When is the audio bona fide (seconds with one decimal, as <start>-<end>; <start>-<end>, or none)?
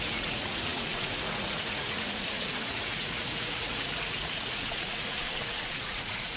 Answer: none